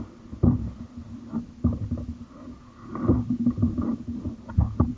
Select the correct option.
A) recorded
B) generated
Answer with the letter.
A